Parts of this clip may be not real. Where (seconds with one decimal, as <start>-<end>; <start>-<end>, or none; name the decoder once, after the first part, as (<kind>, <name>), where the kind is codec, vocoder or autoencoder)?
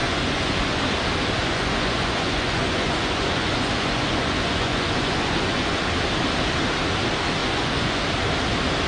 0.0-0.8 (vocoder, Vocos); 1.4-5.8; 7.4-8.0